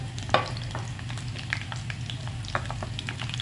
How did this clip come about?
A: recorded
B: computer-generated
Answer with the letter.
A